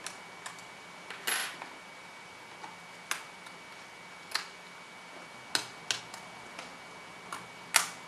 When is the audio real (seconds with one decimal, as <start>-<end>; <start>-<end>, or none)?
0.0-8.1